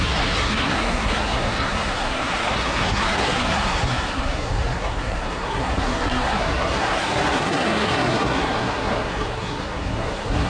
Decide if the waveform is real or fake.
fake